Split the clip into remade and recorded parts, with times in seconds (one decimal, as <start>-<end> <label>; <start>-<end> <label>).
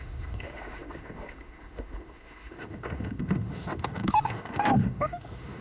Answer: 0.0-5.6 remade